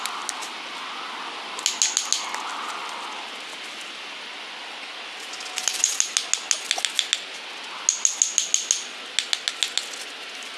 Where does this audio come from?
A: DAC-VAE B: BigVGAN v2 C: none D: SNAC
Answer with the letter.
C